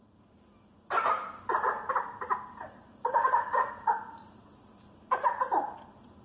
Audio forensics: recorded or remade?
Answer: remade